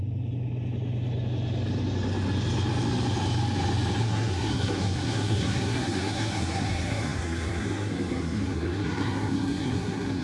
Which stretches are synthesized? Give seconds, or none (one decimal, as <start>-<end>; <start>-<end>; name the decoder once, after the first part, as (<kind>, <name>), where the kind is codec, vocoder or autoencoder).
4.0-10.2 (codec, SNAC)